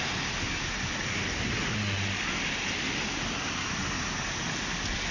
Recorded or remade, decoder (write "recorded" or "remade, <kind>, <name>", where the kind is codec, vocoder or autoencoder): recorded